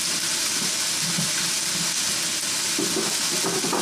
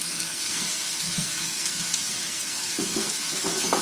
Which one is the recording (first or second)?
first